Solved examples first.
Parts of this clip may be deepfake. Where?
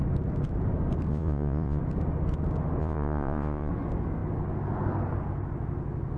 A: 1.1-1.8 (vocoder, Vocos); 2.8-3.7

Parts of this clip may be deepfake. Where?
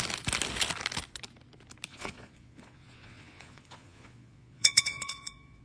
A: 1.9-5.6 (vocoder, Vocos)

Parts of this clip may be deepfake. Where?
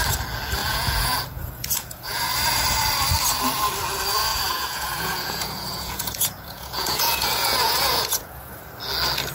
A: 0.6-2.2 (vocoder, Vocos); 4.3-8.6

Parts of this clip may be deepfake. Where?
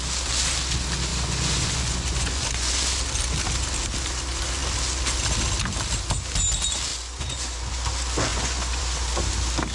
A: 1.1-2.7 (vocoder, Vocos); 6.9-7.8; 8.3-8.8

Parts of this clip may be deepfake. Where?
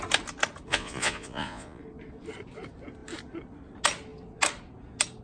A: 0.7-1.8 (vocoder, Vocos)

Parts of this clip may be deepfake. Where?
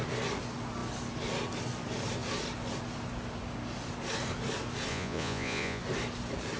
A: 4.9-5.8 (vocoder, Vocos)